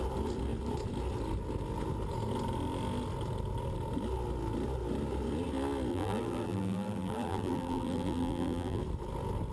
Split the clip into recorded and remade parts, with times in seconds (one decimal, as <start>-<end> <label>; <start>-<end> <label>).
0.0-5.9 recorded; 5.9-8.8 remade; 8.8-9.5 recorded